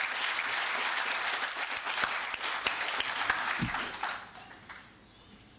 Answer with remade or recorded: recorded